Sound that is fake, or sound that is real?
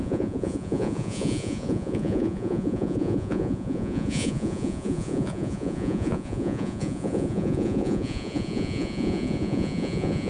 fake